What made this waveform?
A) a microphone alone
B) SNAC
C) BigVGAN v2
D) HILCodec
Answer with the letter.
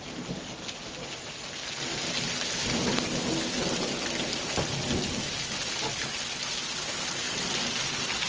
A